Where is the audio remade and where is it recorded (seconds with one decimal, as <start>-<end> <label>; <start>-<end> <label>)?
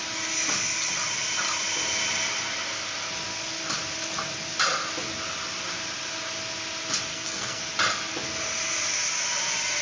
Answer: 0.0-7.1 recorded; 7.1-7.6 remade; 7.6-9.8 recorded